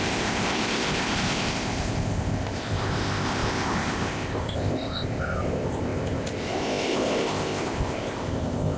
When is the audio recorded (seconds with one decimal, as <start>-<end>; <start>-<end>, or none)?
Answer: none